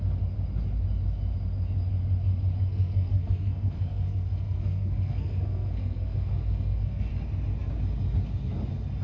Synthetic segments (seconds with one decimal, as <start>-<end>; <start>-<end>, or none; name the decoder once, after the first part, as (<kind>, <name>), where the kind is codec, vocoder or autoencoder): 2.7-7.1 (codec, SNAC)